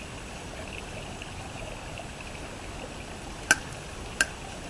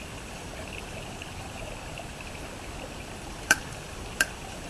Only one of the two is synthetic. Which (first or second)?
second